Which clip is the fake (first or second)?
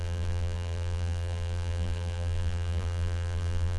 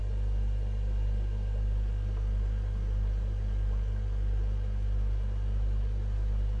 first